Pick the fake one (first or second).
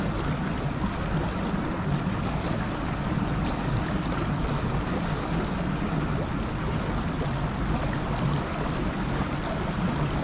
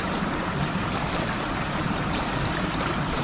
second